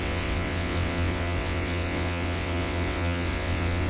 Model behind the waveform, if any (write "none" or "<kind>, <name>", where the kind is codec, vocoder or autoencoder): vocoder, WaveNeXt